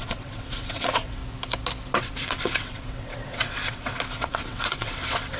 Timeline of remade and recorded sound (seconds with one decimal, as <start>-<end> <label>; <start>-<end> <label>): 0.0-1.2 remade; 1.2-2.0 recorded; 2.0-5.4 remade